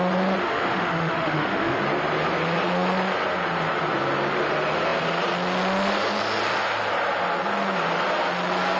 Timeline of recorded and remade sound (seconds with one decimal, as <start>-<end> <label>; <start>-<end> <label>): 0.0-0.4 recorded; 0.4-1.8 remade; 1.8-8.8 recorded